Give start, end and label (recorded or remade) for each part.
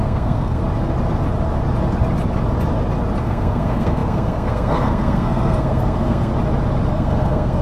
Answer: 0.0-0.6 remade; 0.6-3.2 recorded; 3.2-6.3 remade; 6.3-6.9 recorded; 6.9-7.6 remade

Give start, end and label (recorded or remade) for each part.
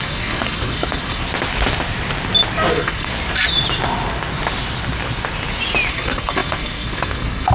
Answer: 0.0-1.2 remade; 1.2-2.7 recorded; 2.7-3.1 remade; 3.1-5.9 recorded; 5.9-7.5 remade